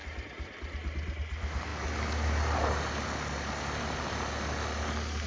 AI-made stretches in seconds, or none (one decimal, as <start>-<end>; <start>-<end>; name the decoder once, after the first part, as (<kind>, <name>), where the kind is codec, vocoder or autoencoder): 0.0-0.6 (vocoder, BigVGAN v2)